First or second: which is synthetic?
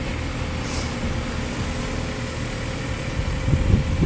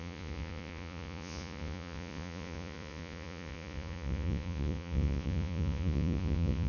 second